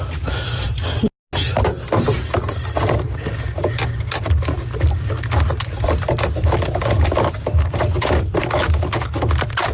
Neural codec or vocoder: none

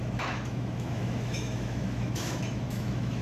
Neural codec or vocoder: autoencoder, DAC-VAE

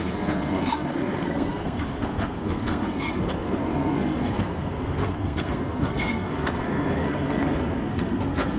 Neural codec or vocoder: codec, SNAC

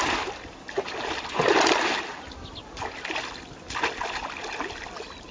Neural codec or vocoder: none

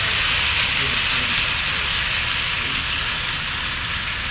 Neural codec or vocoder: none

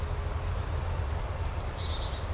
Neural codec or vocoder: none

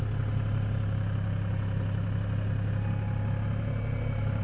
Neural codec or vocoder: none